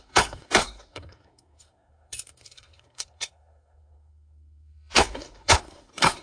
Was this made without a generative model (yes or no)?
no